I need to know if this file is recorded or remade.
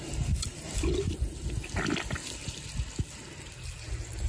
recorded